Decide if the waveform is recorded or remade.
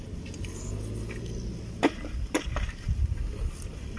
recorded